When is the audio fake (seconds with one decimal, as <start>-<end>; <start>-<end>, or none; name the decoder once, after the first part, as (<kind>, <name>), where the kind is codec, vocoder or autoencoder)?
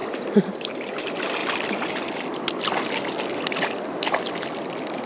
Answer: none